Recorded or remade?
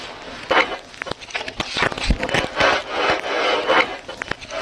recorded